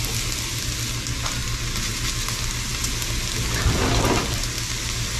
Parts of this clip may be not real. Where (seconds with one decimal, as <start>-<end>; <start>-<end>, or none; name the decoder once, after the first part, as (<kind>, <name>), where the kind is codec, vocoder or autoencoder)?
none